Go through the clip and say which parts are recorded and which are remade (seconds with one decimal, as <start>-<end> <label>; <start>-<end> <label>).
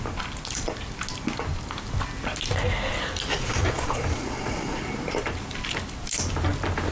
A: 0.0-3.3 recorded; 3.3-4.8 remade; 4.8-6.9 recorded